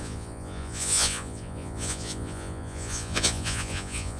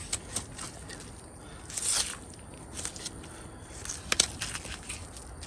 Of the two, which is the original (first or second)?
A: second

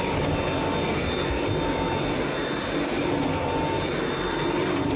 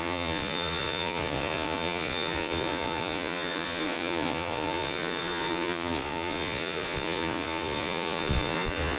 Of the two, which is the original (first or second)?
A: first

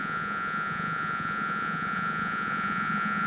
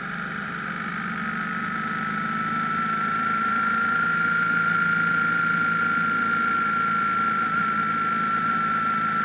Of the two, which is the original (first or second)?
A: second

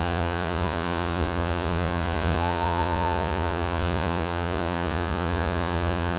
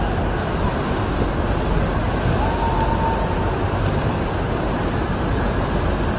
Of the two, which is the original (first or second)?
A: second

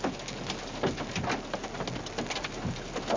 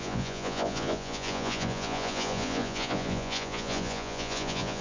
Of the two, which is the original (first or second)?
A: first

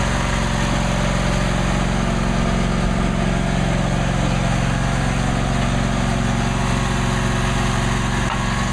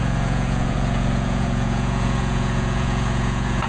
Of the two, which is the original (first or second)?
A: first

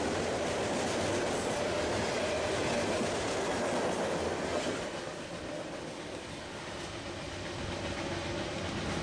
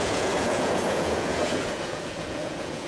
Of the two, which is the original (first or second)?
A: first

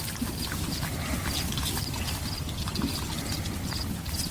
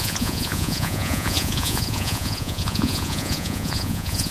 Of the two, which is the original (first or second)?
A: first